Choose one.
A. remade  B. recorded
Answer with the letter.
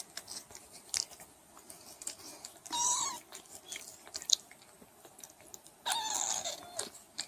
B